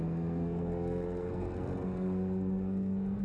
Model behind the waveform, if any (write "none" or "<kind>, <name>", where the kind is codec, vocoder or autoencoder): codec, SNAC